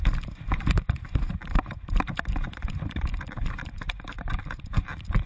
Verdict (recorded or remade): remade